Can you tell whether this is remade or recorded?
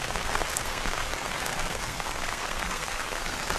remade